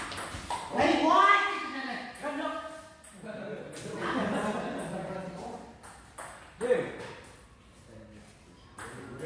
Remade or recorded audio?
recorded